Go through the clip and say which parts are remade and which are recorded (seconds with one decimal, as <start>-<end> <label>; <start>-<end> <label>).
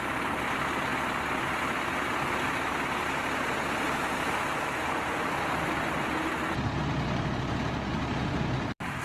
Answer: 0.0-2.7 remade; 2.7-6.9 recorded; 6.9-9.0 remade